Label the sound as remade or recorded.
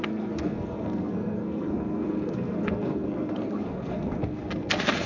remade